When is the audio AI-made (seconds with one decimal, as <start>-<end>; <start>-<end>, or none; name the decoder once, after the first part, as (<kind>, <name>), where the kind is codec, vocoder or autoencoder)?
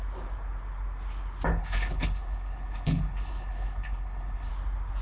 1.5-4.5 (codec, HILCodec)